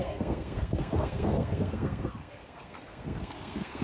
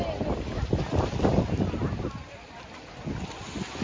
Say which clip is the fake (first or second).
first